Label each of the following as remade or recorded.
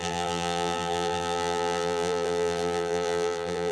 remade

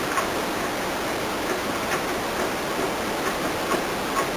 recorded